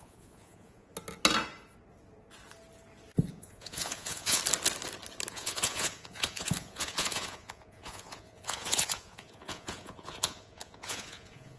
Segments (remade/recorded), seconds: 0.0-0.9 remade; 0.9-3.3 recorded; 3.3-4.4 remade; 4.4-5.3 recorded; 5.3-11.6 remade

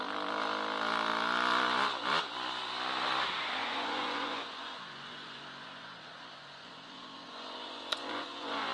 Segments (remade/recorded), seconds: 0.0-3.6 recorded; 3.6-8.7 remade

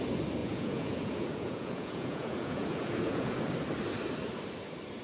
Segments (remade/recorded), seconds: 0.0-0.4 recorded; 0.4-3.4 remade; 3.4-5.0 recorded

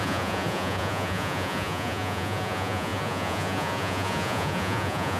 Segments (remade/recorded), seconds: 0.0-5.2 remade

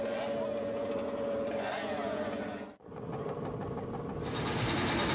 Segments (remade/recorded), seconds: 0.0-0.6 recorded; 0.6-3.3 remade; 3.3-5.1 recorded